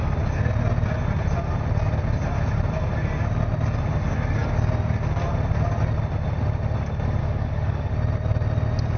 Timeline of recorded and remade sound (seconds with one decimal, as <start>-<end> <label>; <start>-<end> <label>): 0.0-7.2 recorded; 7.2-7.9 remade; 7.9-9.0 recorded